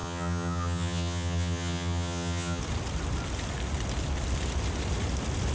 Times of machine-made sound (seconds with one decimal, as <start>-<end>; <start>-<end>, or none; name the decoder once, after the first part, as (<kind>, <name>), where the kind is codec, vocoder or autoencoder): 0.0-2.6 (vocoder, HiFi-GAN)